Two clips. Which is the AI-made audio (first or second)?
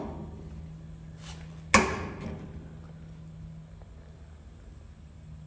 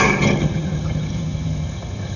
second